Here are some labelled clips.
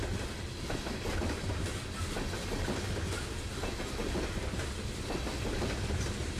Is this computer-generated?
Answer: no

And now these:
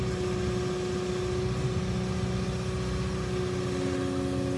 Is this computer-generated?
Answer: no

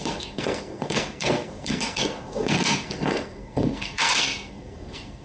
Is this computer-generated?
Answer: yes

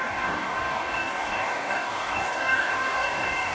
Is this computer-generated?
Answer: yes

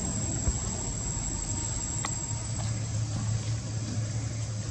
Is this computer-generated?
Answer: no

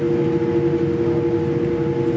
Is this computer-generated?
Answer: no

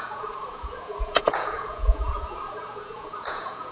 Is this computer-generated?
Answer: yes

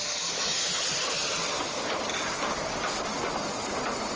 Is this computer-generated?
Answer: no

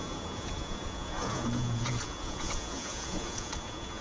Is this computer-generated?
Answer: yes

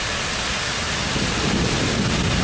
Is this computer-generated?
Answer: no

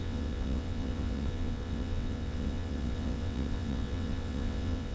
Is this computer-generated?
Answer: yes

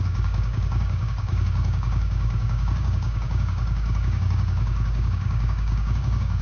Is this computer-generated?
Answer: yes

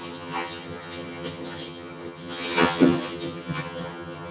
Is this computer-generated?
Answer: yes